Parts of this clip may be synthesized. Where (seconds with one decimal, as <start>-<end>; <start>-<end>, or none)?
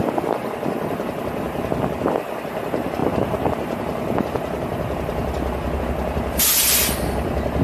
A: none